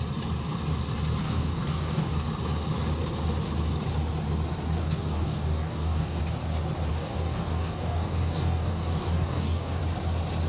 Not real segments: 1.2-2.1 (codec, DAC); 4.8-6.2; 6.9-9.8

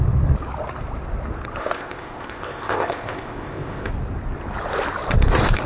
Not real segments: 1.6-3.9 (codec, ZipCodec)

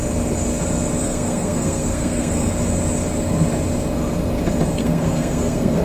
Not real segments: 1.0-2.5 (codec, SNAC); 4.8-5.8

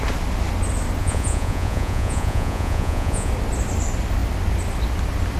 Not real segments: 1.0-3.3 (vocoder, Vocos)

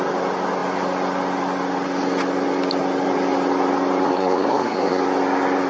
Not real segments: 4.0-5.0 (codec, SNAC)

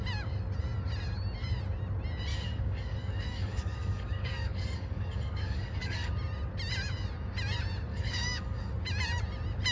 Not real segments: 2.3-6.1 (codec, DAC); 7.9-8.7